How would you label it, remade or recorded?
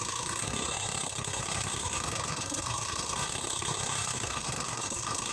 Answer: remade